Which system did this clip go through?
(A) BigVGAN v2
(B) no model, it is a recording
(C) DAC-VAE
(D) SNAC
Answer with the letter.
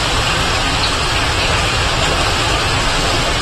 A